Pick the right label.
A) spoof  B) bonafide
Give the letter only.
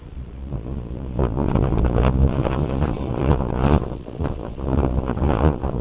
A